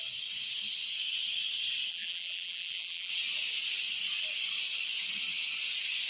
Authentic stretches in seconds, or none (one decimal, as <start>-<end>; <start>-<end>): 0.0-1.9; 3.1-6.1